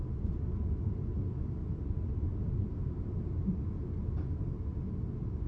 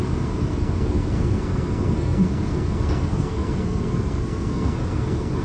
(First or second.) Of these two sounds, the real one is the first